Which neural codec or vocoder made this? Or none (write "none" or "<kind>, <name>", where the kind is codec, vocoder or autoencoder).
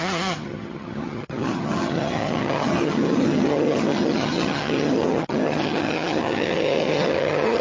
vocoder, HiFi-GAN